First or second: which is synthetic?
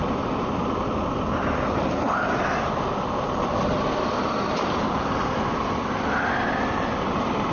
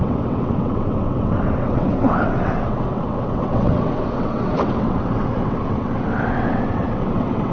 second